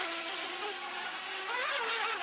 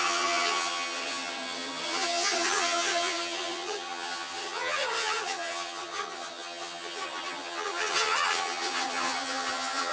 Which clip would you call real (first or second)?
first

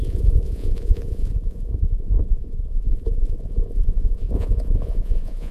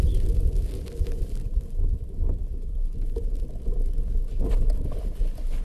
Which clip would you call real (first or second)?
second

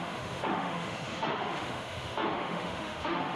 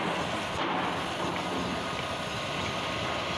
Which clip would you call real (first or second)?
second